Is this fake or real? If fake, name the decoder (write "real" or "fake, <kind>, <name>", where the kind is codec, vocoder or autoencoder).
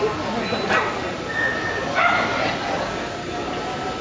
real